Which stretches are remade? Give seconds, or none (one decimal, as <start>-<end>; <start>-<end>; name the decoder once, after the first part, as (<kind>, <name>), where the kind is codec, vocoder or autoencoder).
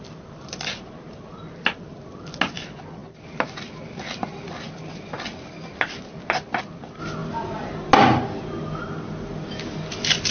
none